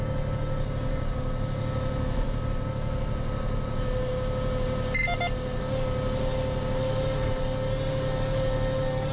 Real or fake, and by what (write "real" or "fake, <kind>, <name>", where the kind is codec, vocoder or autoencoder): real